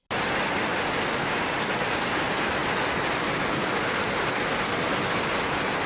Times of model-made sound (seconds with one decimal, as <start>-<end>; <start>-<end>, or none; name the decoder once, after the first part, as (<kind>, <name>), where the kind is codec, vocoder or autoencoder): none